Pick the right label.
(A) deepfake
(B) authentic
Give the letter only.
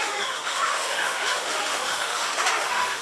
A